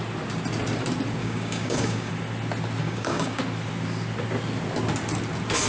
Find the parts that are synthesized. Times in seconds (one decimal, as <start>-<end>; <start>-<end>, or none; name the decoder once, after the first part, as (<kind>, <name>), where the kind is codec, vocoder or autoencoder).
1.2-2.1 (codec, DAC); 2.8-3.4